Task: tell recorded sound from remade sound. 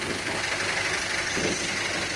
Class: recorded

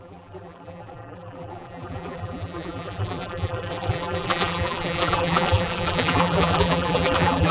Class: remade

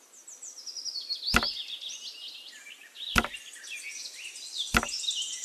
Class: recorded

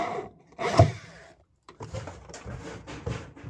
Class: remade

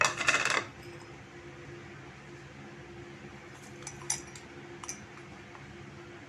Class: recorded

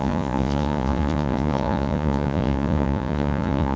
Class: remade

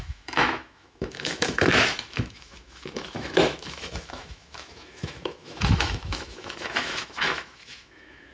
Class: remade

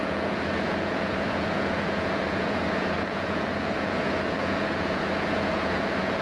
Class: remade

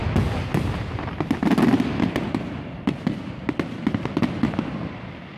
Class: recorded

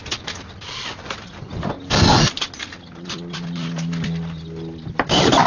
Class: recorded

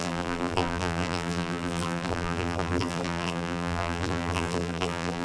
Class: remade